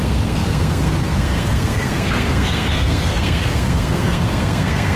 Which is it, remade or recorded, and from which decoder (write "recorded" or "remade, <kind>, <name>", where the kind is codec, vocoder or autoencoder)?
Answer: remade, codec, SNAC